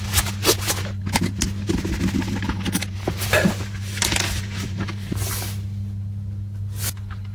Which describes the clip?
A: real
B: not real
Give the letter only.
A